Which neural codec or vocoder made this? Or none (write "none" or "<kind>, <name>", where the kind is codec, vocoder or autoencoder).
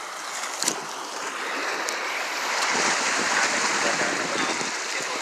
vocoder, BigVGAN v2